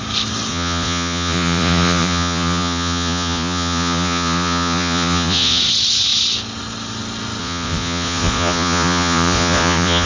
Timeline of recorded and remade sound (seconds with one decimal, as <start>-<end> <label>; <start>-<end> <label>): 0.0-0.5 recorded; 0.5-5.6 remade; 5.6-7.4 recorded; 7.4-10.1 remade

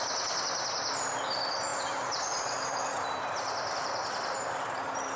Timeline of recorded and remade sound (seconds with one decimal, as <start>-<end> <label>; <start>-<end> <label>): 0.0-1.7 recorded; 1.7-4.8 remade; 4.8-5.2 recorded